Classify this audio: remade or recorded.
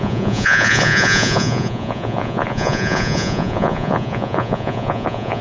remade